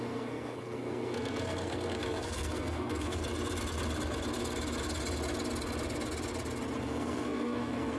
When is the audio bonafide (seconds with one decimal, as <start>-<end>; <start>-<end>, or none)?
3.2-6.8